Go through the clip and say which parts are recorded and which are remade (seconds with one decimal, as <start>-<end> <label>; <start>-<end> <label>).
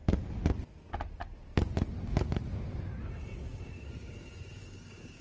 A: 0.0-3.5 recorded; 3.5-5.2 remade